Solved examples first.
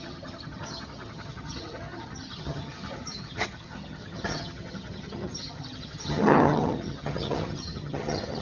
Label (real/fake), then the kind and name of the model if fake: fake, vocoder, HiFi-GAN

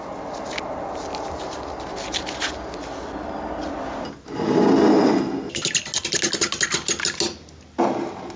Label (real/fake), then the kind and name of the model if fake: real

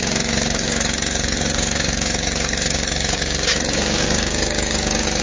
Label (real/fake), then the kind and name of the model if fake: fake, codec, DAC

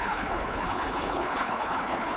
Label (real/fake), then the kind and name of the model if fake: fake, codec, HILCodec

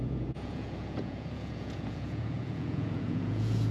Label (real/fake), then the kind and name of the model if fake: fake, vocoder, Vocos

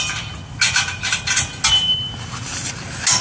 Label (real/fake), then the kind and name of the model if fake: real